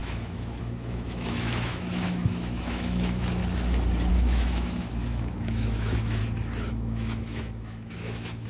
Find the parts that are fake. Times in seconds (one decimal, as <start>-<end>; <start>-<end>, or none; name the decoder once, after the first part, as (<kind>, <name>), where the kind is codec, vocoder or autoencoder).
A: 0.0-3.4 (autoencoder, DAC-VAE); 4.1-6.2; 6.7-8.5